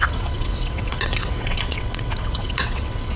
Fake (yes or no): yes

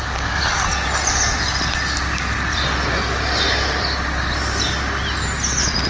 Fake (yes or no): no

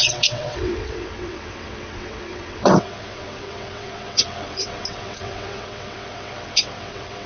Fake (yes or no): yes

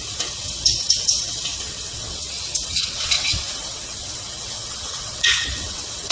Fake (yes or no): yes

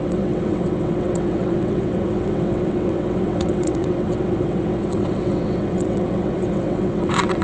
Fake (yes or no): yes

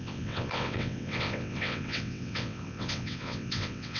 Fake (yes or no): yes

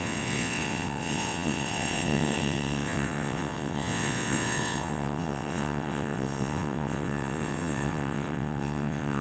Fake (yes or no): yes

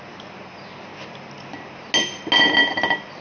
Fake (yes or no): no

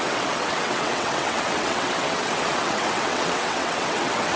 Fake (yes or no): yes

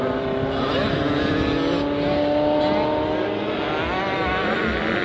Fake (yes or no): no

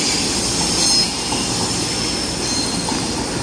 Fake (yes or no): no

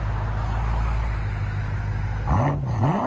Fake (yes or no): no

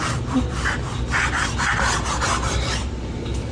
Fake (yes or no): no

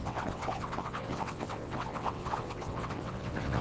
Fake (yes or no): yes